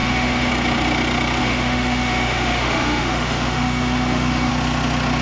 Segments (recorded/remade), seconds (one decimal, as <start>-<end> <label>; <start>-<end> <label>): 0.0-0.5 remade; 0.5-1.4 recorded; 1.4-4.5 remade; 4.5-5.2 recorded